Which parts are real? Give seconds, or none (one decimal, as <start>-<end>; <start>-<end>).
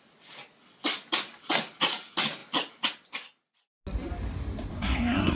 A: 0.0-4.7